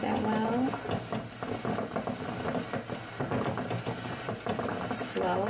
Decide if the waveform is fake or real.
real